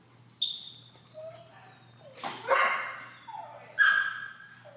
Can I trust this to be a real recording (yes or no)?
yes